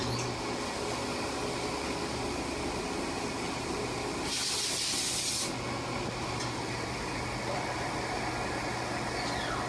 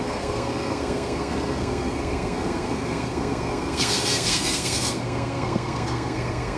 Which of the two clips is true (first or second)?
first